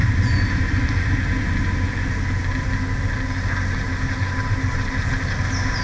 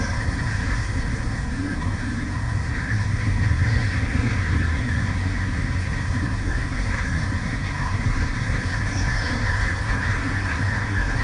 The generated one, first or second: second